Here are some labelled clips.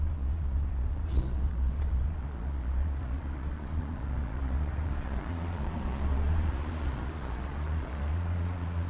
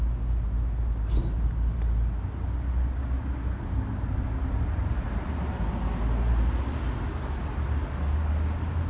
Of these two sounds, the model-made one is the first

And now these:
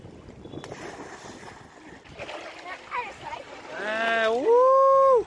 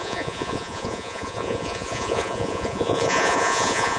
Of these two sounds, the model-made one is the second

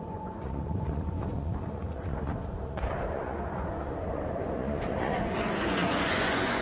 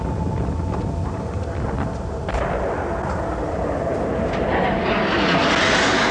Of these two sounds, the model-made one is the first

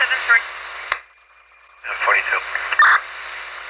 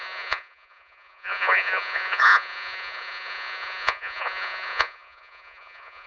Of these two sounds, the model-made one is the second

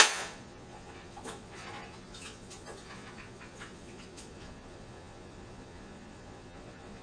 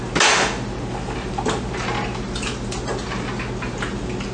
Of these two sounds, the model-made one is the first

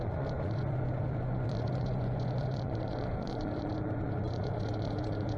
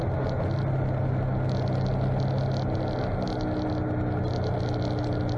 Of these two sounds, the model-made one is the first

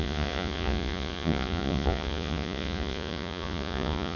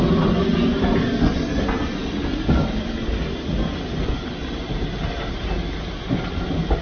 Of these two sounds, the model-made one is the first